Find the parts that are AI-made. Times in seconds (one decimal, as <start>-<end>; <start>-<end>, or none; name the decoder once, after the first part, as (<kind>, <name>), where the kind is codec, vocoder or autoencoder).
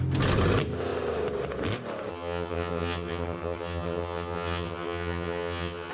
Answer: 2.1-5.9 (vocoder, HiFi-GAN)